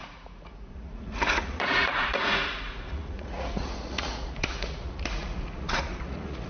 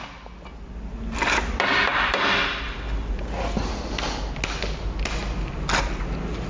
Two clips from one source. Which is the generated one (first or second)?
first